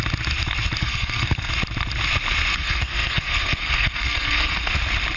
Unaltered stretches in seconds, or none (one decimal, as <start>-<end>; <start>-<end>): 0.0-0.8; 1.5-2.5; 4.7-5.2